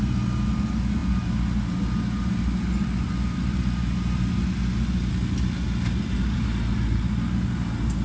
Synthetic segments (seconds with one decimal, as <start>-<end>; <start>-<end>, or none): none

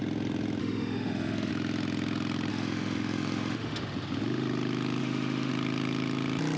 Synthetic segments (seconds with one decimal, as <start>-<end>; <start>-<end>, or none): 0.6-1.5; 2.5-3.8; 5.0-5.5

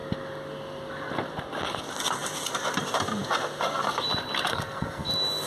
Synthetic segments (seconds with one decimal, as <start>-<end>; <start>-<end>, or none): 4.5-5.1

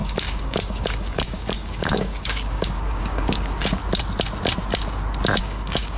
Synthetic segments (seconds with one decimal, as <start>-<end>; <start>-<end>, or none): 0.0-3.8; 5.4-6.0